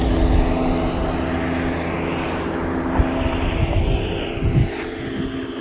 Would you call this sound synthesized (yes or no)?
no